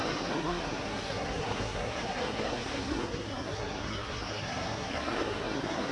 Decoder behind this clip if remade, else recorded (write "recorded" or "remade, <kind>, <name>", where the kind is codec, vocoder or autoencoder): remade, codec, SNAC